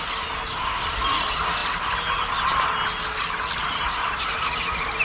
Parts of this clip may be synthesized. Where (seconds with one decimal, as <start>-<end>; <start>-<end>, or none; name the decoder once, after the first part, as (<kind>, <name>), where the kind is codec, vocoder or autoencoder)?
3.6-4.5 (vocoder, BigVGAN v2)